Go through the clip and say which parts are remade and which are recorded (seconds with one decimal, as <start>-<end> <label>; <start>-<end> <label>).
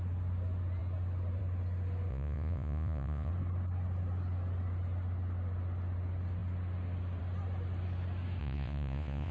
0.0-2.1 recorded; 2.1-3.3 remade; 3.3-8.4 recorded; 8.4-9.3 remade